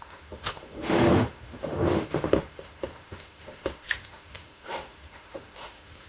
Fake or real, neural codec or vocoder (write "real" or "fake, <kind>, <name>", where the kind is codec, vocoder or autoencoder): fake, autoencoder, DAC-VAE